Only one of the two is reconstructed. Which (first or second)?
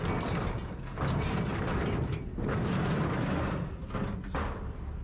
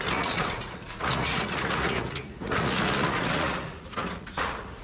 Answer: second